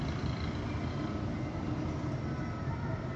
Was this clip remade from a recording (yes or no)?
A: no